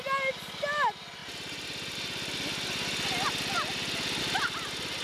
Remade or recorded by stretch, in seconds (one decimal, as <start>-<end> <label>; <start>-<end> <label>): 0.0-5.0 recorded